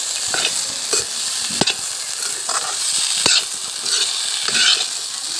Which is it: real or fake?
real